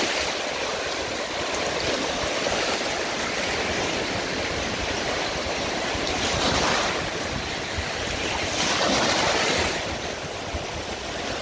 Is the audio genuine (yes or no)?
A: yes